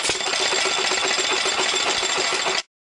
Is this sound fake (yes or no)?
no